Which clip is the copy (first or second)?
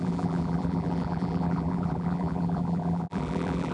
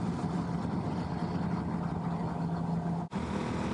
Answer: first